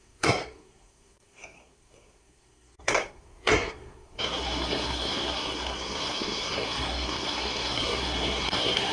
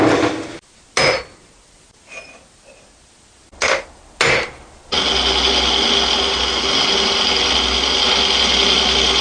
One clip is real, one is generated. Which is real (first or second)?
second